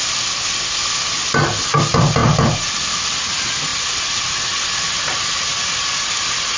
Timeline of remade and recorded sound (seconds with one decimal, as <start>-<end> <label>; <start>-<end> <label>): 0.0-6.6 recorded